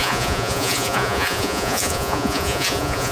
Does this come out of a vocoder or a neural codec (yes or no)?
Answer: yes